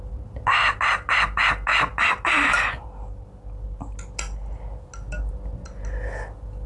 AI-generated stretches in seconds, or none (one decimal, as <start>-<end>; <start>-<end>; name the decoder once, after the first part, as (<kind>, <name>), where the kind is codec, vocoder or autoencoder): none